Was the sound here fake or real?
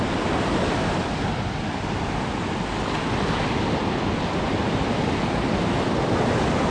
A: real